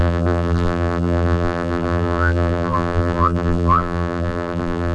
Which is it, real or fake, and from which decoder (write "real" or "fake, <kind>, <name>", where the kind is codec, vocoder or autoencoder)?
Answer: fake, vocoder, BigVGAN v2